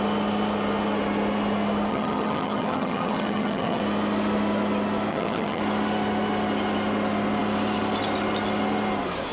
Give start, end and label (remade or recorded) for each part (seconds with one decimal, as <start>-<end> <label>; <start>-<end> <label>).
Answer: 0.0-1.9 recorded; 1.9-3.8 remade; 3.8-5.1 recorded; 5.1-5.6 remade; 5.6-9.3 recorded